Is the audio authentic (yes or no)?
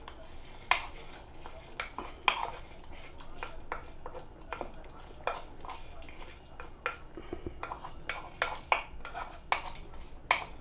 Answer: yes